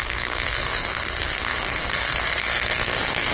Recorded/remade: remade